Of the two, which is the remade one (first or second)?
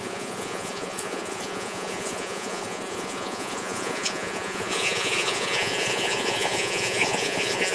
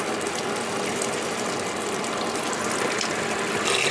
first